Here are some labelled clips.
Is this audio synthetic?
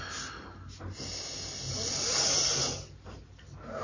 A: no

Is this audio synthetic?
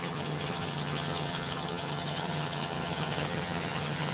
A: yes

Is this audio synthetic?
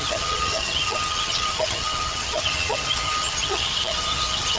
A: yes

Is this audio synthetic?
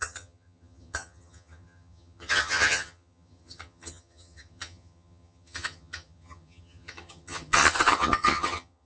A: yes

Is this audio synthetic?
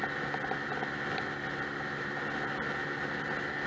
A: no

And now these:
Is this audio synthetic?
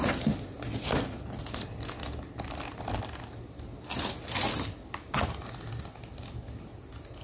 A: no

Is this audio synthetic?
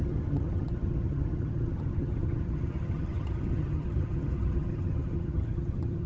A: yes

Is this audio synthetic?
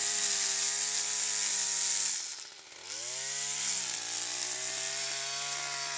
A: no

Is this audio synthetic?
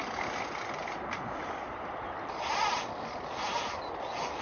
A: no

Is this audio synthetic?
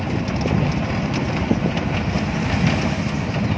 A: no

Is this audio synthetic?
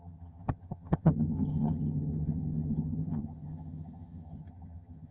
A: yes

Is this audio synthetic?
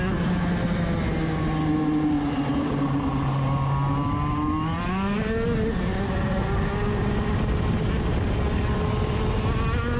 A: no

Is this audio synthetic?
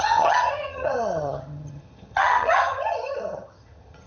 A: yes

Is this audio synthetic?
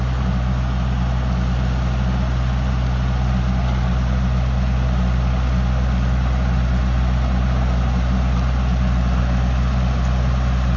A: no